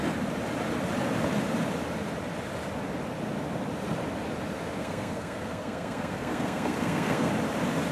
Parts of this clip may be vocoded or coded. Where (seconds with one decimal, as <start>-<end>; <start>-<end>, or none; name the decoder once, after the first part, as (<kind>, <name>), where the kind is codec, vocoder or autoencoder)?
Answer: 4.8-7.3 (codec, SNAC)